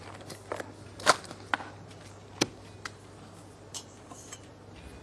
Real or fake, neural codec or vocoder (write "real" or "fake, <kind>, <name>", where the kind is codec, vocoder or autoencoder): real